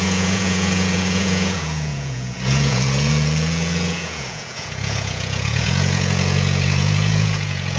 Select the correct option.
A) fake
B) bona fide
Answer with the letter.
A